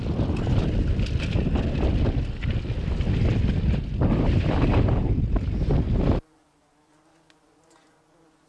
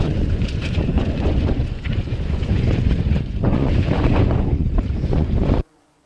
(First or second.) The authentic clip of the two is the first